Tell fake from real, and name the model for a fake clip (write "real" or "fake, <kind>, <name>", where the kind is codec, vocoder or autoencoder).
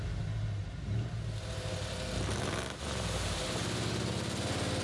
real